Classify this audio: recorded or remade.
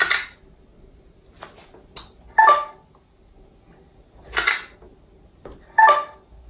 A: recorded